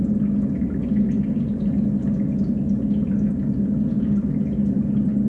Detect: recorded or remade recorded